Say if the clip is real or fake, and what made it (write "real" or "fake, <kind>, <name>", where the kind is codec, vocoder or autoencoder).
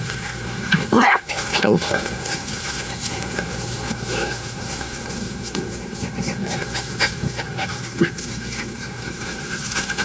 fake, codec, SNAC